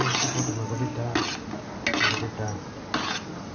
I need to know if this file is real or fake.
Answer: real